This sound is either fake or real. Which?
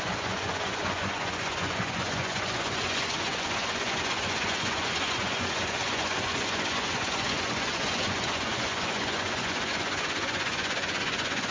fake